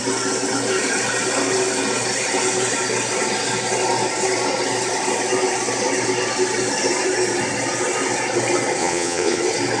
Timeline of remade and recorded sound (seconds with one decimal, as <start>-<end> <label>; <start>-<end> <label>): 0.0-8.8 recorded; 8.8-9.4 remade; 9.4-9.8 recorded